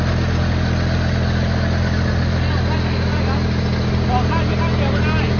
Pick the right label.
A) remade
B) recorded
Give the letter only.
B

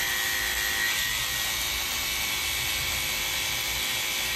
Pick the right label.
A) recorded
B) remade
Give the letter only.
A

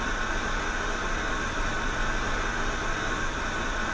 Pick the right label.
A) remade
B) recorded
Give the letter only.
B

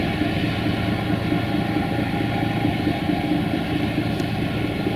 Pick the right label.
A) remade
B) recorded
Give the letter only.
B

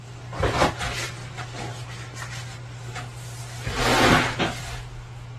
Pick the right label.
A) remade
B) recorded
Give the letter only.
B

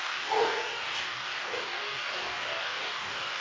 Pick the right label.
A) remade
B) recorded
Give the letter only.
A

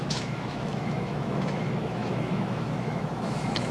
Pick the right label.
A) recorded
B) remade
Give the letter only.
B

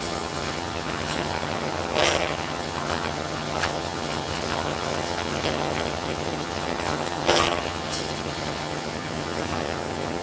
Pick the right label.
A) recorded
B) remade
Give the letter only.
B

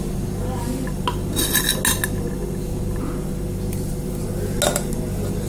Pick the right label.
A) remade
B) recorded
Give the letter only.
B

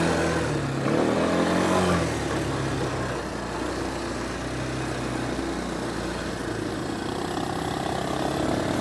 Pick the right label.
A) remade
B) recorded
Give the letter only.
B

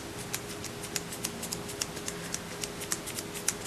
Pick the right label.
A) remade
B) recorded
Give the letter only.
B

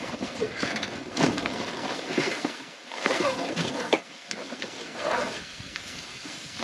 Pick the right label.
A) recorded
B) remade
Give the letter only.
B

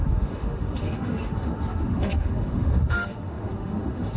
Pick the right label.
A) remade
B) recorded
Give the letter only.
A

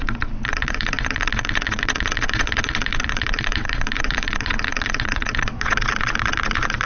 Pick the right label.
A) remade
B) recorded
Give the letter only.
A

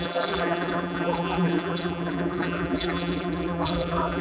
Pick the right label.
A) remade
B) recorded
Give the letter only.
A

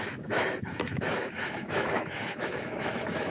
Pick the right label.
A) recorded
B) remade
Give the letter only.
B